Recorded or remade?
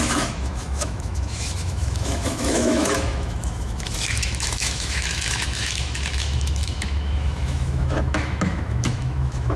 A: remade